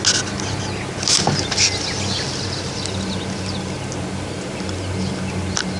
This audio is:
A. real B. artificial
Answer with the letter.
A